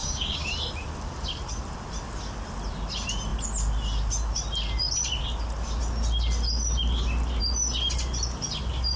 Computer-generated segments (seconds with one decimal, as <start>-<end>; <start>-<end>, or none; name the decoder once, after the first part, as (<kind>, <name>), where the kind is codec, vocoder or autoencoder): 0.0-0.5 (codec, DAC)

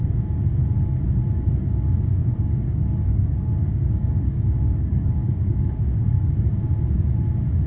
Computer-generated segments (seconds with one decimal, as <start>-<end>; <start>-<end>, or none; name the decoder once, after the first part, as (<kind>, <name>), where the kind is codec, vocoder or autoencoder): 2.2-6.3 (codec, DAC)

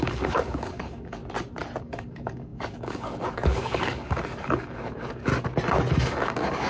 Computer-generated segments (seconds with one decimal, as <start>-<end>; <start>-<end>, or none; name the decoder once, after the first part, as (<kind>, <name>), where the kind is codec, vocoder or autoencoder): 0.0-1.2 (codec, DAC); 1.8-5.3; 5.9-6.7

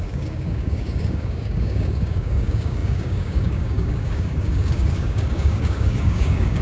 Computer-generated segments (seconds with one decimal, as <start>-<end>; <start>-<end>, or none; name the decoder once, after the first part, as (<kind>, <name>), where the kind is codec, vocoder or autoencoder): 0.0-6.6 (codec, DAC)

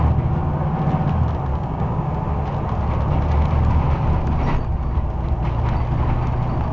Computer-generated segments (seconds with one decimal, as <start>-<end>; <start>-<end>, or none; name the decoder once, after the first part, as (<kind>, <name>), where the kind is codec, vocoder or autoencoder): 1.5-2.1 (codec, DAC)

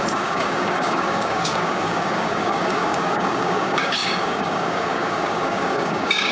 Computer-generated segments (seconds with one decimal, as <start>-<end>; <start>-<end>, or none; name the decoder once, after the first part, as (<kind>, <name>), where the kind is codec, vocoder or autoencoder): 0.0-6.3 (codec, DAC)

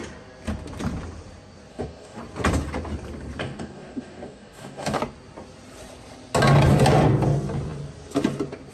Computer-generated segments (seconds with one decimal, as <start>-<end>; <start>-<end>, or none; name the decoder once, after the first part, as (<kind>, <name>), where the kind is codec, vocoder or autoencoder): 1.7-2.2 (codec, DAC); 3.4-5.0

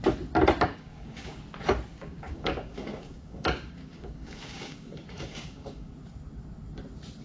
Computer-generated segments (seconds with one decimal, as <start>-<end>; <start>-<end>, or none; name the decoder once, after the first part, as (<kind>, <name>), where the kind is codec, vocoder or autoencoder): 0.7-1.4 (codec, DAC); 1.9-5.9